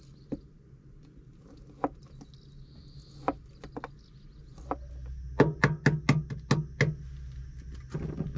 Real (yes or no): yes